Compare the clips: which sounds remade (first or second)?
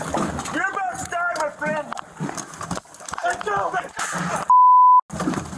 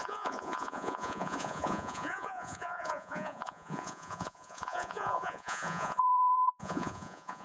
second